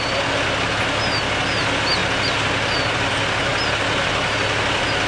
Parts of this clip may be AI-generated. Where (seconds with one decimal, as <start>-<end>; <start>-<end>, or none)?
none